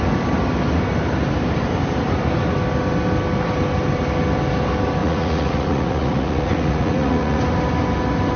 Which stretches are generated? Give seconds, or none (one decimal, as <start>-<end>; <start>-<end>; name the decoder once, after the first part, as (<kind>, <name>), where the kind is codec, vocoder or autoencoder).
5.0-7.4 (vocoder, Vocos)